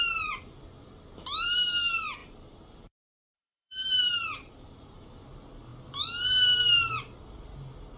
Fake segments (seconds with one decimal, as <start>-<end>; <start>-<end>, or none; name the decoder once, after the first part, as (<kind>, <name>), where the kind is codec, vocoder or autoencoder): 2.2-5.2 (vocoder, BigVGAN v2)